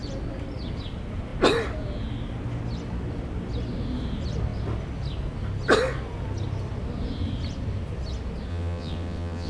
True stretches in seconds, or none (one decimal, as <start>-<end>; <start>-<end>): 0.0-8.5